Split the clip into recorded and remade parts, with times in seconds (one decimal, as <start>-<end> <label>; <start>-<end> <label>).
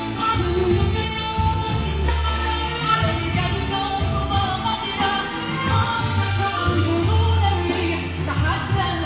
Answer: 0.0-3.2 remade; 3.2-6.0 recorded; 6.0-7.0 remade; 7.0-9.1 recorded